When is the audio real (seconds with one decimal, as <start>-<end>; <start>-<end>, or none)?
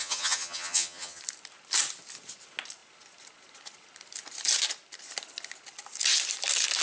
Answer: 1.2-6.8